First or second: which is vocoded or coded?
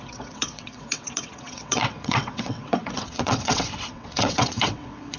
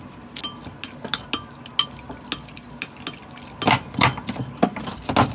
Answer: first